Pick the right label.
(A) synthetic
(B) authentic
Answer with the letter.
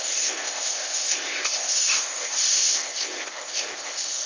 A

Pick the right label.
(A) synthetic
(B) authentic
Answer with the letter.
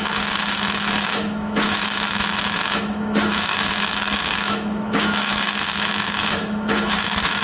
A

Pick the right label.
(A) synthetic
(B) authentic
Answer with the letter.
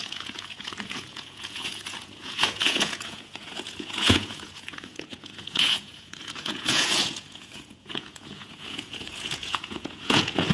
A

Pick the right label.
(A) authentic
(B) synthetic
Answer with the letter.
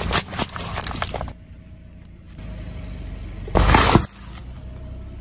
A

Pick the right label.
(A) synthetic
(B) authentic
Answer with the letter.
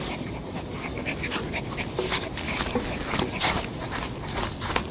B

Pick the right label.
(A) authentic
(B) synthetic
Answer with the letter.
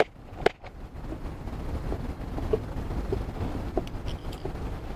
A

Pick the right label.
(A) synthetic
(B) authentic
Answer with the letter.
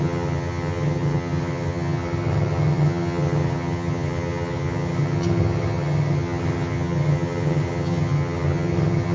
A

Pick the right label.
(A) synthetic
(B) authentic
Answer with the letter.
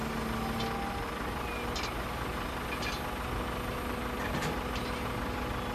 B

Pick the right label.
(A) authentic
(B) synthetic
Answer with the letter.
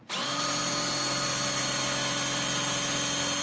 A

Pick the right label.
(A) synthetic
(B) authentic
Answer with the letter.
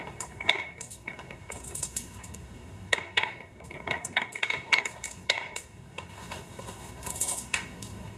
A